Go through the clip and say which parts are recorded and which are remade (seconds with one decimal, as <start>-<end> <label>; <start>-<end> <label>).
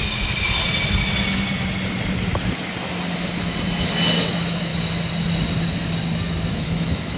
0.0-4.3 recorded; 4.3-4.7 remade; 4.7-6.5 recorded; 6.5-7.2 remade